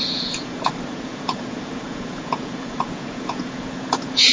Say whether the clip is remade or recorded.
remade